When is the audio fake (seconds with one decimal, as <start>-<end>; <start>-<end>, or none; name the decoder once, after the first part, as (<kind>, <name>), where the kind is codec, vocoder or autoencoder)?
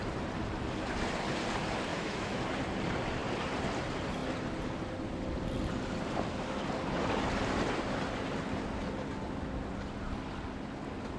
1.9-2.4 (autoencoder, DAC-VAE)